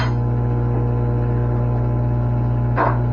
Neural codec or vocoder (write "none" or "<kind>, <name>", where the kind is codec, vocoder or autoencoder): none